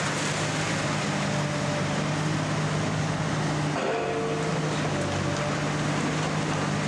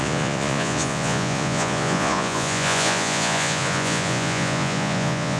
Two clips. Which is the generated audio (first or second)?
second